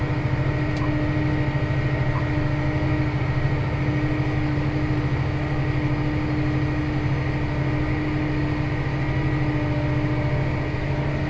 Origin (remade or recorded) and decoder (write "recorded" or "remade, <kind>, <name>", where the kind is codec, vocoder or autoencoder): recorded